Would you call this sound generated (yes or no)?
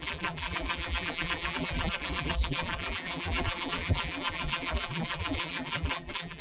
yes